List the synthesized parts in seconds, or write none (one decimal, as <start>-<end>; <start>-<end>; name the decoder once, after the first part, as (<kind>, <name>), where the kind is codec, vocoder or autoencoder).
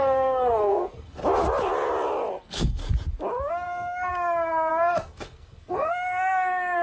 0.0-1.2 (codec, SNAC); 2.3-2.8; 3.5-4.1; 4.7-6.8